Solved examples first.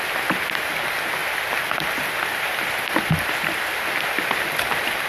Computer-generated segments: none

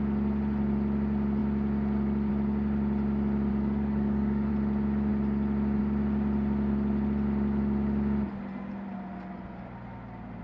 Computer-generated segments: 3.5-4.5